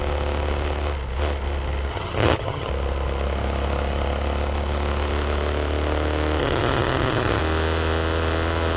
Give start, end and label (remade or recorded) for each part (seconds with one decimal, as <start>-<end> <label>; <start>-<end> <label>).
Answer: 0.0-1.9 recorded; 1.9-2.7 remade; 2.7-6.4 recorded; 6.4-7.4 remade; 7.4-8.8 recorded